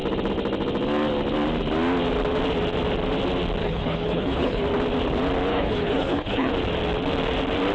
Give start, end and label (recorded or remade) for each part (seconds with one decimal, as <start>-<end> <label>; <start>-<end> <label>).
0.0-3.6 recorded; 3.6-4.6 remade; 4.6-5.5 recorded; 5.5-6.5 remade; 6.5-7.7 recorded